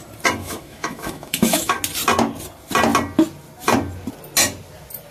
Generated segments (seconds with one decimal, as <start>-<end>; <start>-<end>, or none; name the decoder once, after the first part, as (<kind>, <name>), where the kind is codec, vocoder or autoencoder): 0.4-1.8 (autoencoder, DAC-VAE)